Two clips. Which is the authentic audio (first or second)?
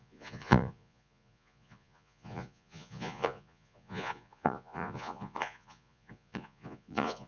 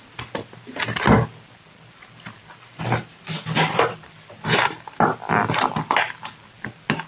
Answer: second